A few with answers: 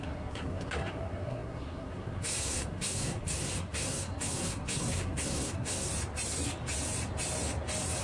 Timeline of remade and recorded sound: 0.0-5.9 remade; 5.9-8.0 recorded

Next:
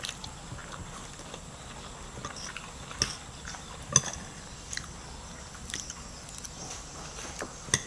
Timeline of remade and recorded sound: 0.0-7.9 recorded

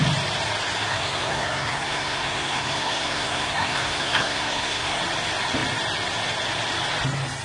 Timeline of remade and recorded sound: 0.0-0.9 recorded; 0.9-5.0 remade; 5.0-7.4 recorded